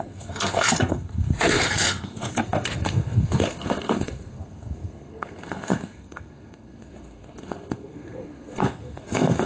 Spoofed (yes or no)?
yes